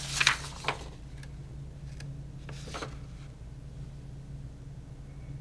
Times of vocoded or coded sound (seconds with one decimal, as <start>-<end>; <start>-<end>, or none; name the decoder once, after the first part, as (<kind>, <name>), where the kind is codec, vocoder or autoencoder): none